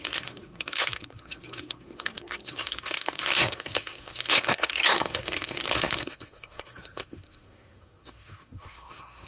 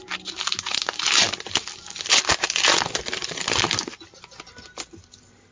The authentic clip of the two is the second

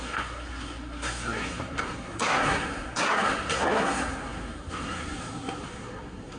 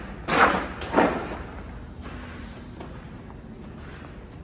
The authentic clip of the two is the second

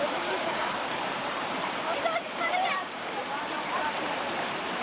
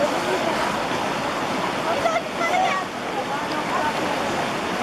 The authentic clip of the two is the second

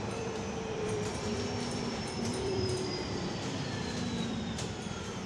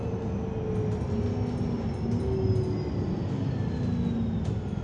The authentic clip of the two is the second